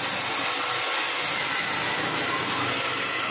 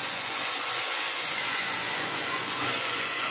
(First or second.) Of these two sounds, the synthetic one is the second